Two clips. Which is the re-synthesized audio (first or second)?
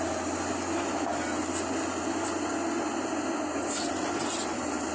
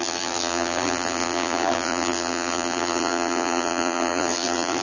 second